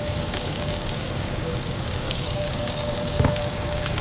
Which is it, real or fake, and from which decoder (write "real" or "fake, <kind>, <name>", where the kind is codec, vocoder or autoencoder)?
fake, codec, DAC